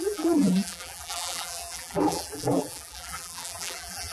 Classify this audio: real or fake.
fake